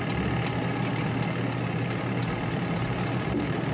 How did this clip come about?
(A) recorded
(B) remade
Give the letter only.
A